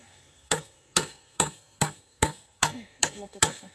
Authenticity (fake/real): fake